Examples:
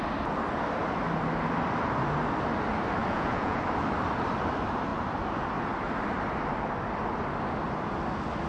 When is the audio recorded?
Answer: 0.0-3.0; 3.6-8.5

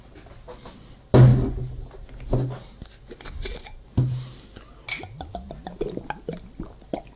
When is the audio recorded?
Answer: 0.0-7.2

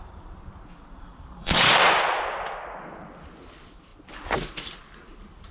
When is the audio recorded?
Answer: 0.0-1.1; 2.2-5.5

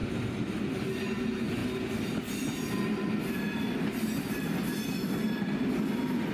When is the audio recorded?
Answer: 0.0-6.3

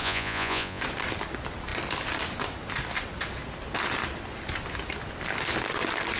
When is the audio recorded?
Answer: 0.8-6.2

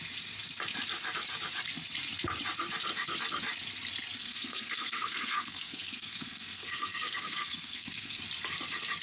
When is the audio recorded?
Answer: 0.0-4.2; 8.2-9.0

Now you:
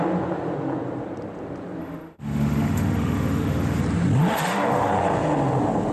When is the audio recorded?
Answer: 0.0-1.8; 3.8-4.2; 4.9-5.9

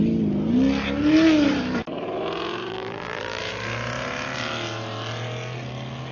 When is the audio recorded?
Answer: 0.0-2.7; 3.4-6.1